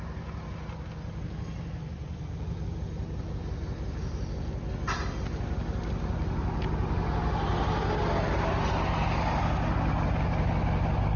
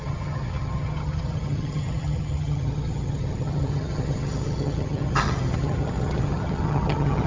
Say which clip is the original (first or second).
first